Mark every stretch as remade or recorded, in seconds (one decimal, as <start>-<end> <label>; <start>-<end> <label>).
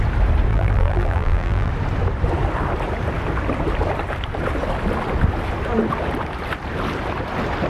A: 0.0-0.5 recorded; 0.5-1.7 remade; 1.7-7.7 recorded